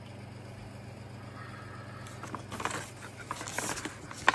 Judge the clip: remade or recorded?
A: recorded